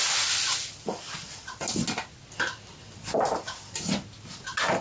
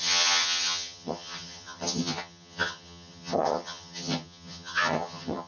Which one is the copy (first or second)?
second